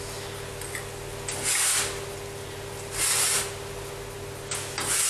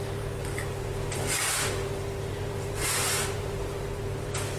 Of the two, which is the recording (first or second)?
first